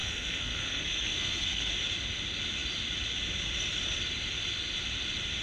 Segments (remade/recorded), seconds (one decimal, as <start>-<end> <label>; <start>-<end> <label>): 0.0-1.7 remade; 1.7-5.4 recorded

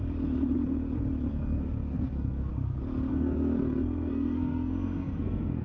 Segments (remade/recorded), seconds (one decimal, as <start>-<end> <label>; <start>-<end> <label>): 0.0-1.3 recorded; 1.3-2.5 remade; 2.5-3.1 recorded; 3.1-5.6 remade

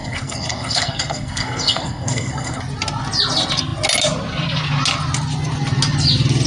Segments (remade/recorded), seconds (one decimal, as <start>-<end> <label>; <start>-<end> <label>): 0.0-2.6 remade; 2.6-6.5 recorded